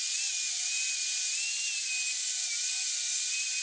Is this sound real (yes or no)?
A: yes